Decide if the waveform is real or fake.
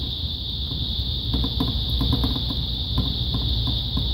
fake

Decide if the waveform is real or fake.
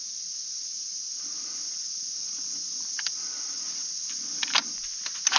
real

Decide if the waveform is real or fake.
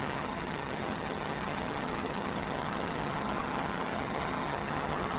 fake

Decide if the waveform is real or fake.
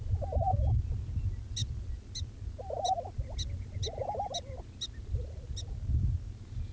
real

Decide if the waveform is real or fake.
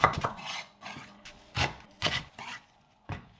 fake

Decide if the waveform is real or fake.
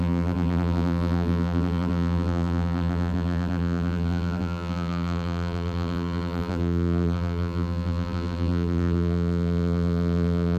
fake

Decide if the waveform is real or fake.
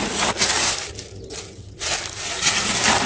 real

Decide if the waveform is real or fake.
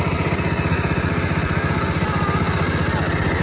real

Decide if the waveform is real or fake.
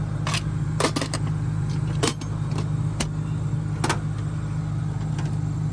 real